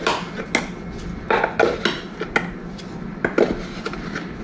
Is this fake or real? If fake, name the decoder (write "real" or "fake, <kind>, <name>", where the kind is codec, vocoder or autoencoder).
real